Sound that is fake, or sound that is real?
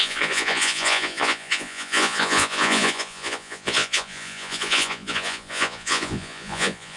fake